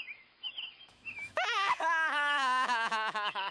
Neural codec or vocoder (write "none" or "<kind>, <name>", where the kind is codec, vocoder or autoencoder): autoencoder, DAC-VAE